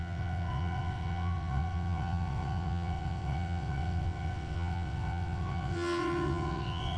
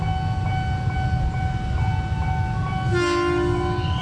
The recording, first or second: second